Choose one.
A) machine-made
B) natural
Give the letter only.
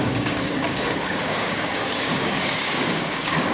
A